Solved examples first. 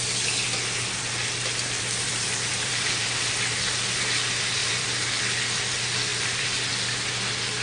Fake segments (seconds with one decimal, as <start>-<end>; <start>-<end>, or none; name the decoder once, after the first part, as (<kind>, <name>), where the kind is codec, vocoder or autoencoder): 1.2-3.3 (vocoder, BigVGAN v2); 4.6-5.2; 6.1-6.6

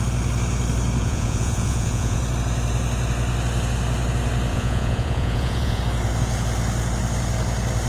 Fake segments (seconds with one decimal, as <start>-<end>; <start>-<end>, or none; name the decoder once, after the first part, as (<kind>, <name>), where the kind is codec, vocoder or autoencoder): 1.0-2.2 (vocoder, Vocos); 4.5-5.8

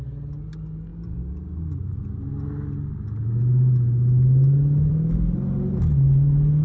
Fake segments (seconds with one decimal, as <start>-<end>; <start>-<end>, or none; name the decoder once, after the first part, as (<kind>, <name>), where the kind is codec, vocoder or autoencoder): none

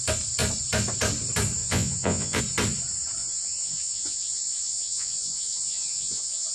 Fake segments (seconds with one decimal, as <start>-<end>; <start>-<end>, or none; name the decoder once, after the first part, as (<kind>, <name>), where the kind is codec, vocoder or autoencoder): 1.6-2.4 (vocoder, Vocos); 3.2-6.5

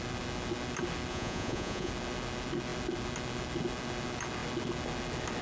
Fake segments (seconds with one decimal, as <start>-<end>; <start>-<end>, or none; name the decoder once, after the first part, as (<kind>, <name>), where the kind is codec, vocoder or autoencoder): 1.1-1.9 (vocoder, Vocos)

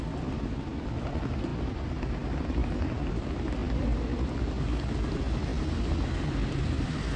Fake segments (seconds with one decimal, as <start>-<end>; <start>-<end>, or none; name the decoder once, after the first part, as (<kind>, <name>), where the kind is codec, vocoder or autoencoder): none

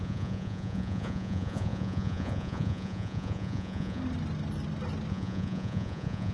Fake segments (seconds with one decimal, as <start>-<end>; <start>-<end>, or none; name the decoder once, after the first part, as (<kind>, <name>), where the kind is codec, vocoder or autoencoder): 0.0-4.0 (vocoder, Vocos); 5.1-6.3

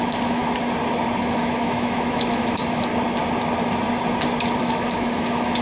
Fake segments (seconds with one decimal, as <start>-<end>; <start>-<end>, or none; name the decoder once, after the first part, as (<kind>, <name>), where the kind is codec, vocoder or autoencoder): 0.0-0.4 (autoencoder, DAC-VAE); 1.2-2.9; 4.6-5.6